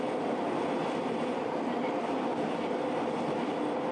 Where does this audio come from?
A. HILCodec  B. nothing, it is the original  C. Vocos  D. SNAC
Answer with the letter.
B